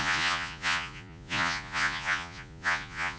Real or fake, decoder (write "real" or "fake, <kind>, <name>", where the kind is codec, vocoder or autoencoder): fake, vocoder, Vocos